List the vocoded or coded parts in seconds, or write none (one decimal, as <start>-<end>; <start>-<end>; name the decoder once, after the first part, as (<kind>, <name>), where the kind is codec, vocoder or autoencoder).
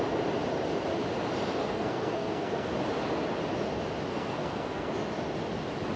1.6-2.7 (codec, SNAC); 4.1-4.9